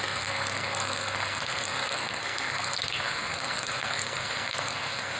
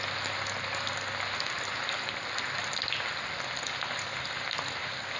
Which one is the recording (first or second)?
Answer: second